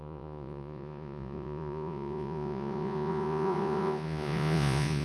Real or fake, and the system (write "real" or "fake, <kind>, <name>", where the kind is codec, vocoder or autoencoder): fake, vocoder, Vocos